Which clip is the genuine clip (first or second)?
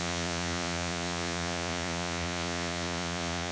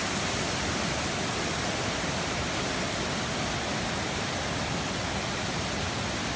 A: second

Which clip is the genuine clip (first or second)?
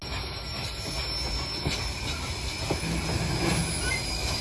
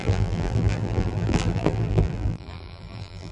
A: first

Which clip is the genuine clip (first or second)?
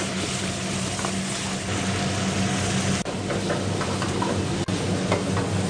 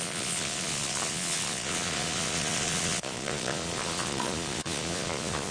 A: first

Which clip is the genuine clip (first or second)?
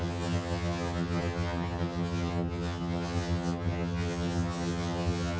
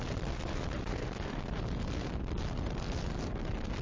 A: second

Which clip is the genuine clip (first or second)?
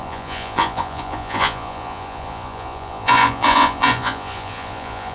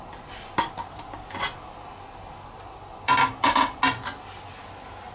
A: second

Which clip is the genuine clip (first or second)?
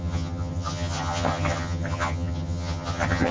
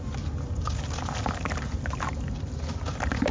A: second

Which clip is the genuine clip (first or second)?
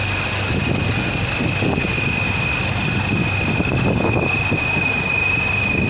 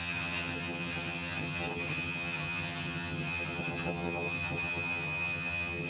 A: first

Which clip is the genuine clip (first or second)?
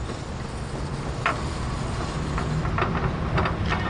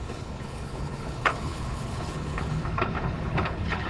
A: first